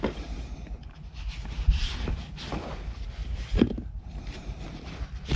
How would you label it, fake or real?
real